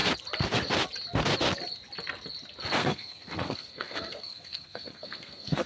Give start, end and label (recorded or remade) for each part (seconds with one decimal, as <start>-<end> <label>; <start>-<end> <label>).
0.0-2.8 recorded; 2.8-5.7 remade

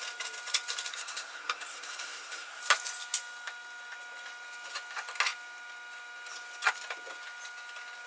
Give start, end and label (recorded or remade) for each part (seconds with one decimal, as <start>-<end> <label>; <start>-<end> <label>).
0.0-0.9 recorded; 0.9-2.6 remade; 2.6-8.1 recorded

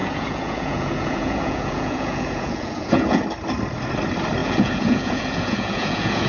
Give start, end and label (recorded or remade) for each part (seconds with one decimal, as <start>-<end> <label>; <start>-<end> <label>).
0.0-3.2 remade; 3.2-4.4 recorded; 4.4-6.3 remade

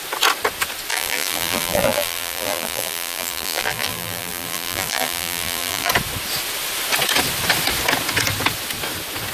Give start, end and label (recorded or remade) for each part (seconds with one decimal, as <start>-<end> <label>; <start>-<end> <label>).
0.0-0.9 recorded; 0.9-5.9 remade; 5.9-9.3 recorded

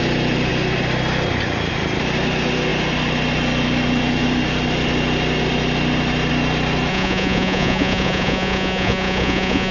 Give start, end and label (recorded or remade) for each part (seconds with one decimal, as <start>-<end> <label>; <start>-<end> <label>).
0.0-6.9 recorded; 6.9-9.7 remade